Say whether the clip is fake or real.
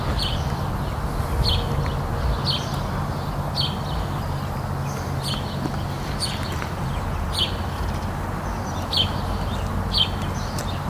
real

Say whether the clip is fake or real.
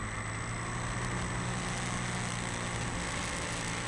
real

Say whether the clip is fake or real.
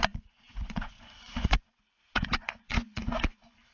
fake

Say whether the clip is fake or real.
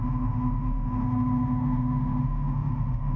fake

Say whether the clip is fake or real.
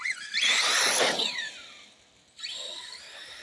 real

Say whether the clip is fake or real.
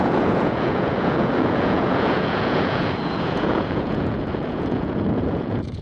fake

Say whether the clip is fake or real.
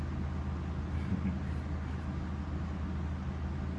real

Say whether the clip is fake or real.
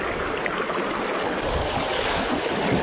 real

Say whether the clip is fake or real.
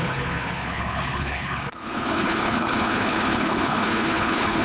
fake